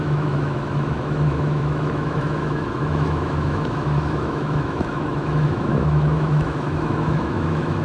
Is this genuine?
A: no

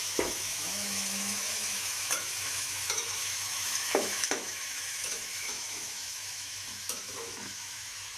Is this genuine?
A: no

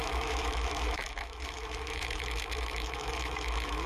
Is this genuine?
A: no